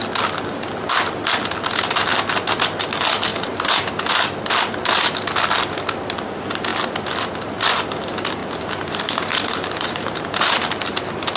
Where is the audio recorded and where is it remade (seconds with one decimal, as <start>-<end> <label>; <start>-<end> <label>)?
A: 0.0-3.3 recorded; 3.3-3.9 remade; 3.9-8.4 recorded; 8.4-10.6 remade; 10.6-11.4 recorded